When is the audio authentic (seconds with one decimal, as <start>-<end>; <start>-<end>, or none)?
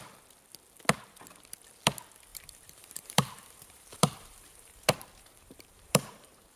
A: 0.0-2.3